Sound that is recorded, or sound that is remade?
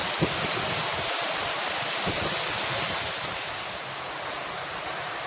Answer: recorded